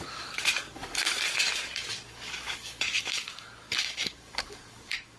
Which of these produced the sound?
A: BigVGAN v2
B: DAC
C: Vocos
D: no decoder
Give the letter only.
B